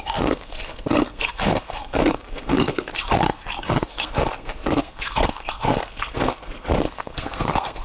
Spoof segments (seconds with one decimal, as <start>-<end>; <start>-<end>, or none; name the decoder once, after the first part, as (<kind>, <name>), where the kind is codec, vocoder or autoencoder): 0.0-2.9 (codec, SNAC); 3.9-7.8